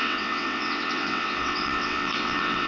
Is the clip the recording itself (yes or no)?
no